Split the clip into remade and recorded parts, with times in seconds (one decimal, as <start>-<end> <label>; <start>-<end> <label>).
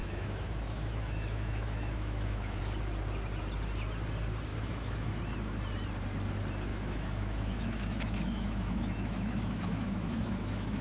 0.0-2.6 remade; 2.6-4.5 recorded; 4.5-5.2 remade; 5.2-6.7 recorded; 6.7-10.8 remade